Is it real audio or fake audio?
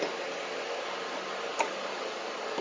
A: real